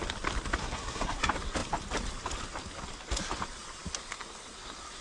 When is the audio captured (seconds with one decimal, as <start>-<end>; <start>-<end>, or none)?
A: 0.0-0.6; 1.2-5.0